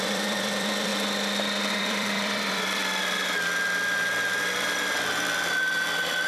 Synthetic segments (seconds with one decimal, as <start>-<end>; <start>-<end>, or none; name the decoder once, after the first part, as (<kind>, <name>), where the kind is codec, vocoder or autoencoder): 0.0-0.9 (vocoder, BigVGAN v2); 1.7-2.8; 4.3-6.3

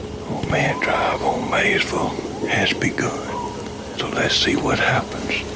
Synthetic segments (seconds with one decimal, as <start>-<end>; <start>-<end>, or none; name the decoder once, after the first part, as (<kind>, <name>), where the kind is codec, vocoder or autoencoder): none

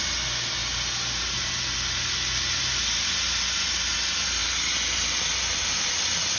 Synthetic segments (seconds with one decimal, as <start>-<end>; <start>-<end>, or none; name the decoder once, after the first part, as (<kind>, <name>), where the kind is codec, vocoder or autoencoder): none